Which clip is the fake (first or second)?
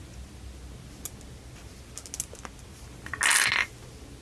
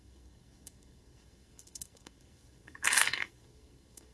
second